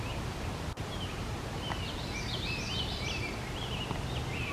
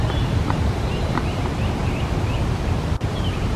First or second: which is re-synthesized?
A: second